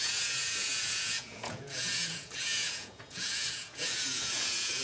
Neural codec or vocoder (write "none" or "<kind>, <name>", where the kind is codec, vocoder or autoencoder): vocoder, Vocos